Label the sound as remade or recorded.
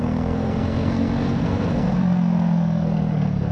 remade